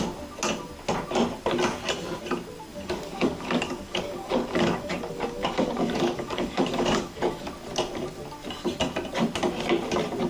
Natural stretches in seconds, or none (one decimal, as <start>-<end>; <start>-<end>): 0.0-2.7; 7.5-10.3